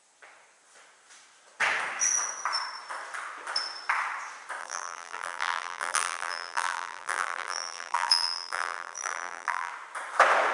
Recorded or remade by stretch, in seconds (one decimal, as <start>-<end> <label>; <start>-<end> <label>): 0.0-4.6 recorded; 4.6-9.7 remade; 9.7-10.5 recorded